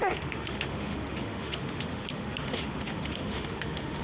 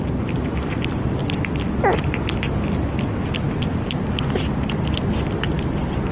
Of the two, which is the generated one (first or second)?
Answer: first